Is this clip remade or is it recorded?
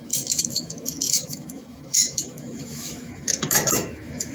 remade